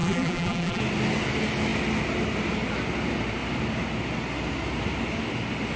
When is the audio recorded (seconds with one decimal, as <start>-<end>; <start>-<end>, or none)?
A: 0.8-5.8